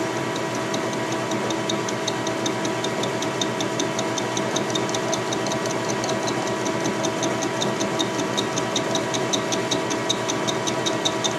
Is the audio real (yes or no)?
yes